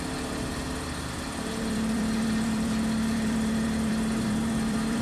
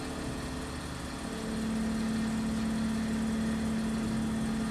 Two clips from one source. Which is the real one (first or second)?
second